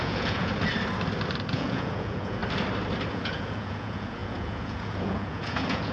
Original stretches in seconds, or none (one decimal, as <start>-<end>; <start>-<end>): 0.5-1.5; 2.4-3.1